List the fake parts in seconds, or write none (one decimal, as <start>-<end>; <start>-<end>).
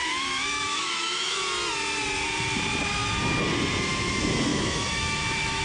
0.0-1.4; 4.5-5.6